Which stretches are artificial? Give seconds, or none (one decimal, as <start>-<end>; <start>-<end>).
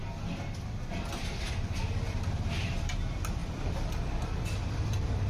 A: 2.8-5.3